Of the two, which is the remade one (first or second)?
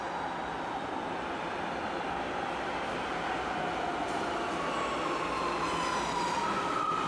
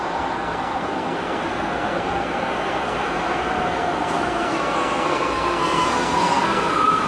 second